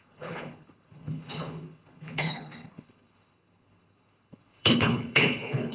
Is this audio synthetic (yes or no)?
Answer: yes